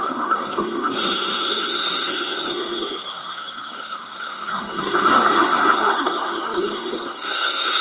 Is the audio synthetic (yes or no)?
yes